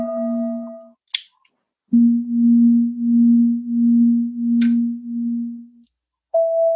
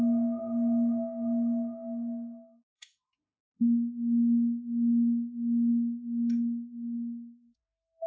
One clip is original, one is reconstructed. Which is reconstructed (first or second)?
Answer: second